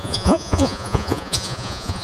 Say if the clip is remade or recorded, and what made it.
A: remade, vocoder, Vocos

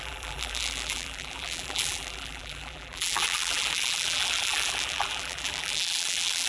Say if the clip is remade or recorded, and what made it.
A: remade, vocoder, BigVGAN v2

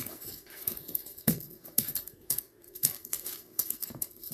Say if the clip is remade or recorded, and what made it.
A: remade, codec, SNAC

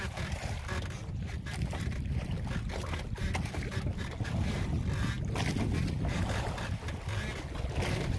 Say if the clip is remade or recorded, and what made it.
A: recorded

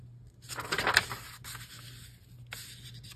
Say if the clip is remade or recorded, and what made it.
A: recorded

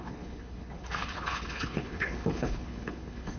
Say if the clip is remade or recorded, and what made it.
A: remade, codec, HILCodec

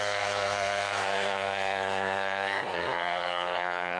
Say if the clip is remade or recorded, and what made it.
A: remade, codec, SNAC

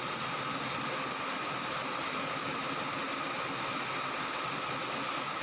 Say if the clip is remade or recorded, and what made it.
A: recorded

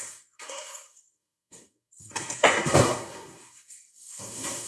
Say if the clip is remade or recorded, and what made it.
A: remade, codec, SNAC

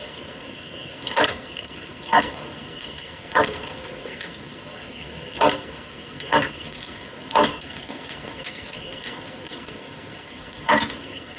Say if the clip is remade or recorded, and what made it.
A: remade, codec, SNAC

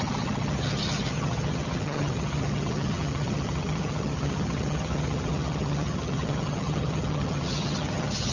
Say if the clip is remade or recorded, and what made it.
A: remade, vocoder, HiFi-GAN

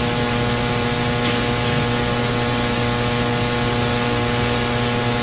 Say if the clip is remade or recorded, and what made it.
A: recorded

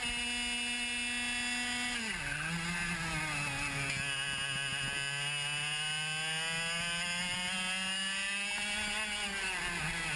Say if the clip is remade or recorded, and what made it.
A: recorded